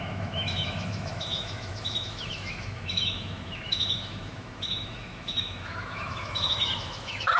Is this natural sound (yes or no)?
no